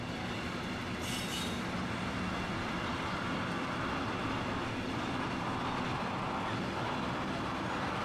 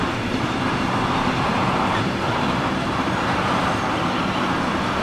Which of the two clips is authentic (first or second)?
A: first